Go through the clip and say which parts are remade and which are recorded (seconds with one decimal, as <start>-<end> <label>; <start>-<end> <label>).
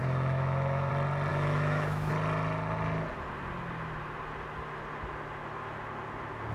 0.0-0.9 remade; 0.9-1.3 recorded; 1.3-2.1 remade; 2.1-6.5 recorded